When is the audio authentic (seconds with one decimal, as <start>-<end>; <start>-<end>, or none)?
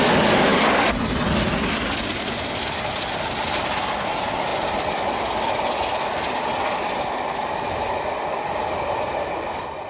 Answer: 0.0-9.9